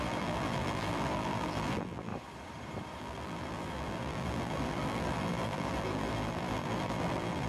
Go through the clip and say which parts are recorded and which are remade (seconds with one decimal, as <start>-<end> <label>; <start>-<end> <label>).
0.0-2.1 remade; 2.1-3.0 recorded; 3.0-7.5 remade